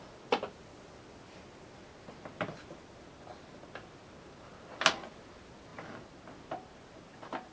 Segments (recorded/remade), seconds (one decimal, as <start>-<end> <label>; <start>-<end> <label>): 0.0-7.5 recorded